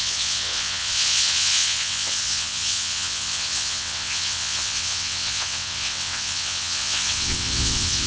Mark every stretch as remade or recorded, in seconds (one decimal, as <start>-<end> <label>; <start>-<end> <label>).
0.0-8.1 remade